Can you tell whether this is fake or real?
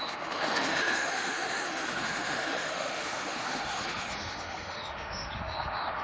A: fake